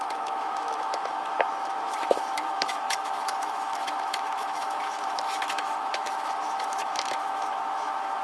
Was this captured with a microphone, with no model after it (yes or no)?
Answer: no